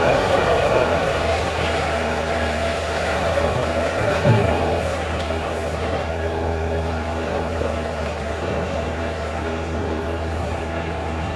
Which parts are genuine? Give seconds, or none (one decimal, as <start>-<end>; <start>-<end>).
none